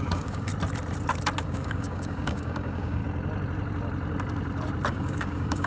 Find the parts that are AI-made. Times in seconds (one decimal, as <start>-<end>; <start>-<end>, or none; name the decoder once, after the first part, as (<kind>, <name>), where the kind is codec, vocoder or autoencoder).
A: 0.0-0.5 (codec, DAC); 1.4-3.0; 4.9-5.7